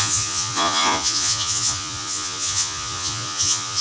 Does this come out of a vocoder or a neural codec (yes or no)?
yes